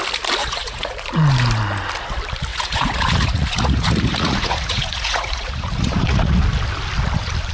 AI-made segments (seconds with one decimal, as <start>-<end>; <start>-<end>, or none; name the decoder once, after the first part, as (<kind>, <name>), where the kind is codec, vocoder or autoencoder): 0.4-0.9 (vocoder, Vocos); 2.5-6.4